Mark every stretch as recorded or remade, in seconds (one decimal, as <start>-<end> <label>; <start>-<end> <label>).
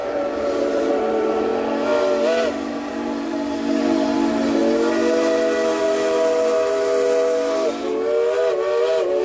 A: 0.0-1.5 remade; 1.5-2.7 recorded; 2.7-4.6 remade; 4.6-9.2 recorded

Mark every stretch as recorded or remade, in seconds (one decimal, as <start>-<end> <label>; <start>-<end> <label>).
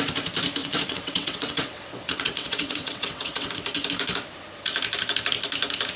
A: 0.0-0.6 recorded; 0.6-3.5 remade; 3.5-6.0 recorded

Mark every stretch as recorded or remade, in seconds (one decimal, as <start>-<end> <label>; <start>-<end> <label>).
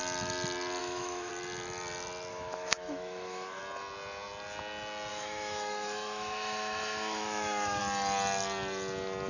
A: 0.0-0.8 recorded; 0.8-1.3 remade; 1.3-2.3 recorded; 2.3-3.6 remade; 3.6-5.1 recorded; 5.1-7.8 remade; 7.8-9.3 recorded